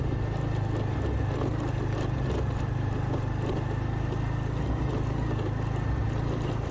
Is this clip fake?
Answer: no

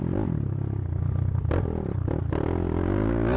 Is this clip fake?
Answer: no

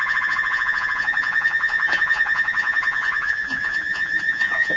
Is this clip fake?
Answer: yes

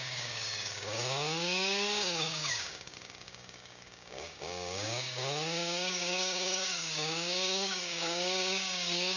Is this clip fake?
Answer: yes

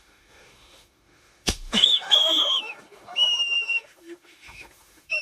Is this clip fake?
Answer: yes